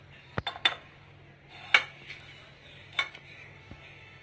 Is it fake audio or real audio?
real